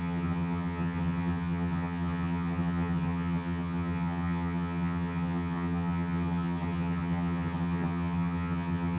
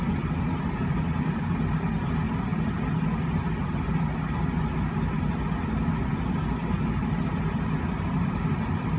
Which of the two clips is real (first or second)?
second